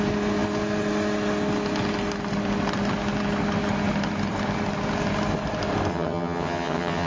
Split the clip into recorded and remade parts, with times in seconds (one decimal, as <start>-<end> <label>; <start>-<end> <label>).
0.0-5.9 recorded; 5.9-7.1 remade